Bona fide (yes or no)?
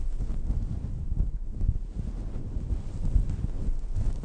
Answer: yes